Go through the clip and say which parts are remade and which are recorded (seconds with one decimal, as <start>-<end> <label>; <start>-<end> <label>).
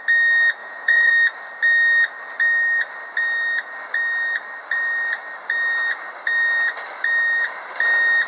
0.0-0.6 recorded; 0.6-1.1 remade; 1.1-8.3 recorded